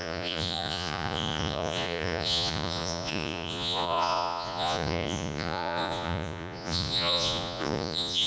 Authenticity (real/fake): fake